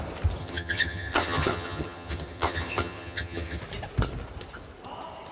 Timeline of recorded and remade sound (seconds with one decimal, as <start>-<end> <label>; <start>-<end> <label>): 0.0-0.4 recorded; 0.4-3.6 remade; 3.6-5.3 recorded